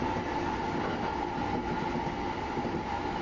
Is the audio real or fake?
real